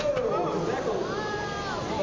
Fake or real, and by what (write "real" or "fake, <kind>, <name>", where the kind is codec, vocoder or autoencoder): real